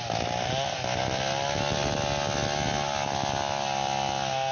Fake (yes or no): no